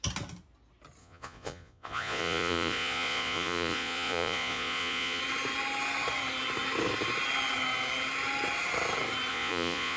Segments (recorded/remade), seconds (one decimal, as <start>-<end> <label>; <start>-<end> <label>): 0.0-1.0 recorded; 1.0-5.2 remade; 5.2-9.3 recorded; 9.3-10.0 remade